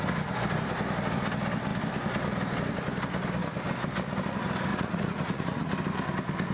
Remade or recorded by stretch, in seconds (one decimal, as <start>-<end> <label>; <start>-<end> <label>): 0.0-4.7 recorded; 4.7-5.7 remade; 5.7-6.5 recorded